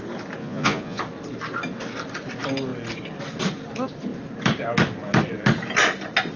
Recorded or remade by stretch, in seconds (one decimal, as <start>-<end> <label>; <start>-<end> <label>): 0.0-0.4 recorded; 0.4-1.0 remade; 1.0-6.4 recorded